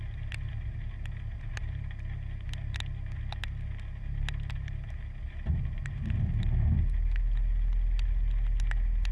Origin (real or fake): real